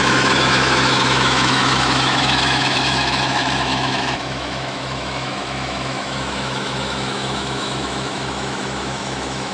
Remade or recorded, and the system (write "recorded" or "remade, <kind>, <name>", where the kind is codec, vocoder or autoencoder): remade, autoencoder, DAC-VAE